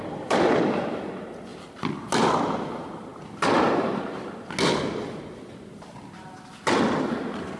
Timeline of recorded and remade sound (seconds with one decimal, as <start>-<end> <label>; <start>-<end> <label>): 0.0-7.6 recorded